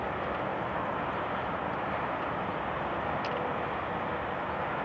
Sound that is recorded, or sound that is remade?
recorded